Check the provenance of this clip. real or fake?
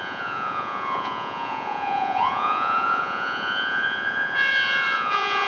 fake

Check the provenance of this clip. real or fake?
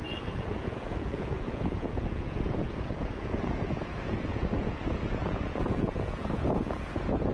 fake